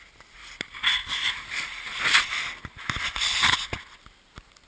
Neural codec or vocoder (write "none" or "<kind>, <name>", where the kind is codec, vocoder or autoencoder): none